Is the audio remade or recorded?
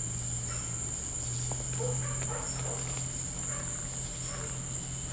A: recorded